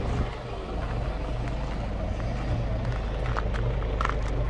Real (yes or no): yes